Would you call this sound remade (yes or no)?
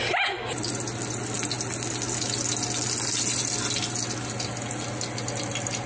no